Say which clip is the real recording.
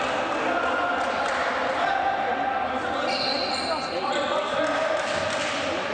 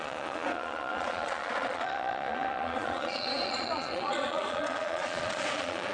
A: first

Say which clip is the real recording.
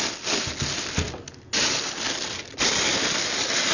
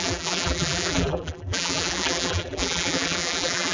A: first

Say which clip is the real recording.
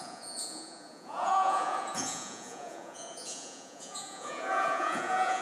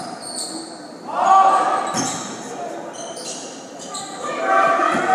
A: second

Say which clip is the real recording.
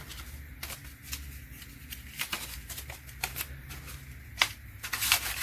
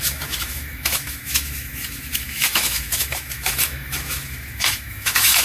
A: first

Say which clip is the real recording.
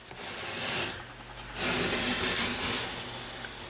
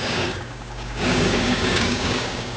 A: first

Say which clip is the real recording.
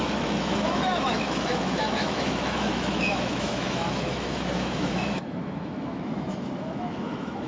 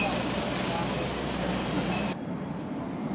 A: second